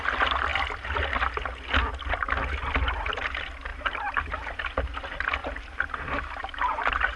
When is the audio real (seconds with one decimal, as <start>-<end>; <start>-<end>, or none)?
0.0-3.7; 4.6-5.4; 6.8-7.2